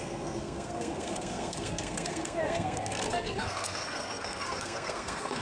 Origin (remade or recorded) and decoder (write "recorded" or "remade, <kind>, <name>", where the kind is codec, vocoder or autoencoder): remade, codec, SNAC